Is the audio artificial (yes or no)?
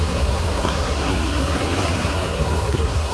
yes